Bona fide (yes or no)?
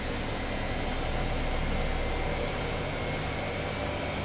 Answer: yes